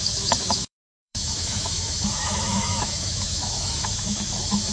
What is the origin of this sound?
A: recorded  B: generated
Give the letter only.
B